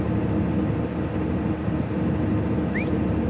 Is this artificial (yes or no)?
no